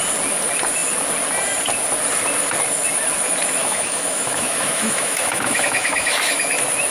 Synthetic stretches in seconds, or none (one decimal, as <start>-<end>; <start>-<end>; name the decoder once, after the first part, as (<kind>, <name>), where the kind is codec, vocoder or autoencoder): 3.6-6.4 (autoencoder, DAC-VAE)